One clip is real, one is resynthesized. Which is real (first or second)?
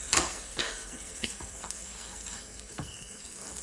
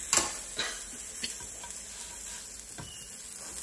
second